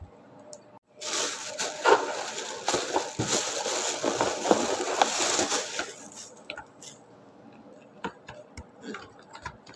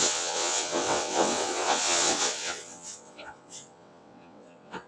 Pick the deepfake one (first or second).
second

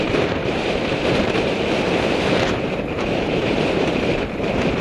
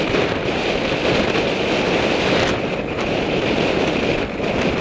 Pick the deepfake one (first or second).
first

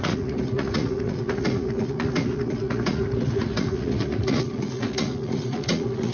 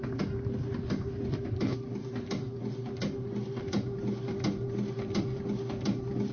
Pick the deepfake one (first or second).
first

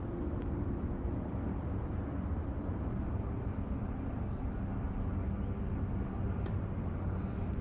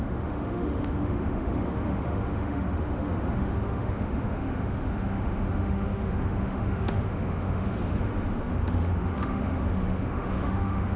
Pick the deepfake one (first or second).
second